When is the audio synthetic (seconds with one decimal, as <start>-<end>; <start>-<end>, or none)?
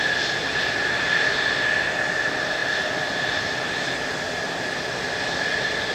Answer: none